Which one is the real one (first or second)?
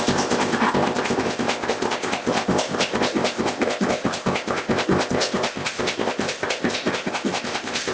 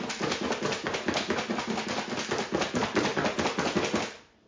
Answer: second